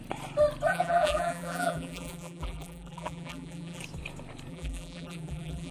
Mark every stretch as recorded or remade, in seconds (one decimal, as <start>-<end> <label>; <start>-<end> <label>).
0.0-0.7 recorded; 0.7-3.8 remade; 3.8-4.5 recorded; 4.5-5.7 remade

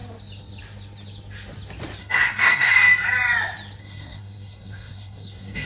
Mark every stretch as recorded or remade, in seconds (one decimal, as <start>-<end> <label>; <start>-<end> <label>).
0.0-2.0 recorded; 2.0-2.7 remade; 2.7-3.8 recorded; 3.8-5.7 remade

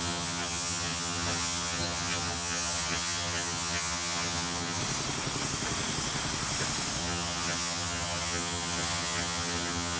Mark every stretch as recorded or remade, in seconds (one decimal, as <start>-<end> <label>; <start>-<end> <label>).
0.0-4.8 remade; 4.8-7.0 recorded; 7.0-10.0 remade

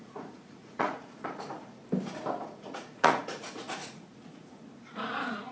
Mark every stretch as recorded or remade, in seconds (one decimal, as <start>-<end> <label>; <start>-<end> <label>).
0.0-1.8 remade; 1.8-2.4 recorded; 2.4-5.5 remade

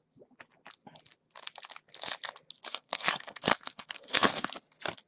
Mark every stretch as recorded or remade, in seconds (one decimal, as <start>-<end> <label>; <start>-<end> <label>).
0.0-2.7 recorded; 2.7-4.5 remade; 4.5-5.1 recorded